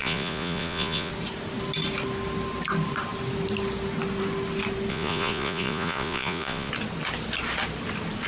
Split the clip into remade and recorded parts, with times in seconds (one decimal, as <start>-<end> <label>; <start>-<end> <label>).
0.0-1.1 remade; 1.1-4.9 recorded; 4.9-6.7 remade; 6.7-8.3 recorded